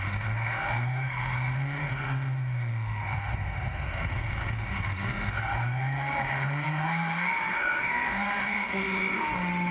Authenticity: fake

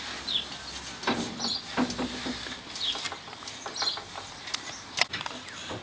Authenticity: real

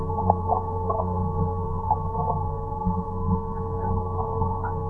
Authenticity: fake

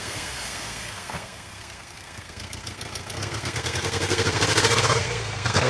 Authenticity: fake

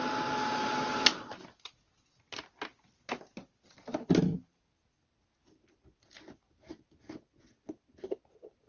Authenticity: real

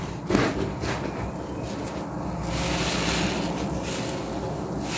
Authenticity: real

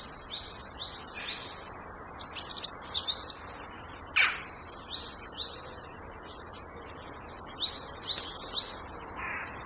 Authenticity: real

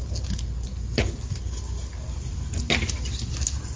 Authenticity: real